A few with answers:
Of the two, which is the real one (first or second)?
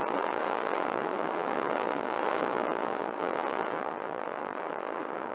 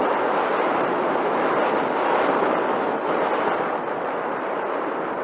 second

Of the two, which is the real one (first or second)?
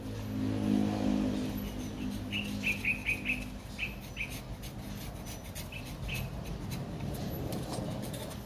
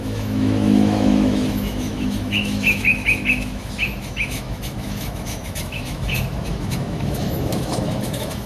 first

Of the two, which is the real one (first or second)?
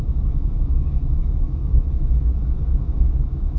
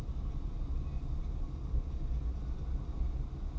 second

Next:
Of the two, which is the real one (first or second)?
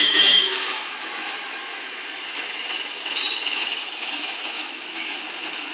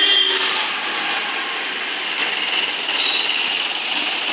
second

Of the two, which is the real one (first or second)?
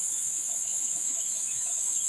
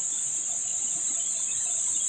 second